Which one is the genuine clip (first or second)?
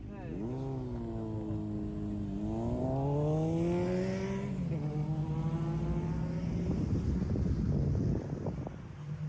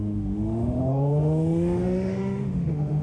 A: first